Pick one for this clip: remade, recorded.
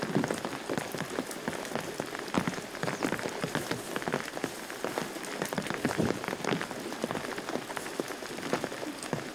remade